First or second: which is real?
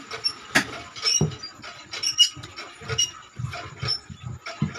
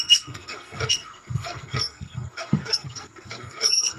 first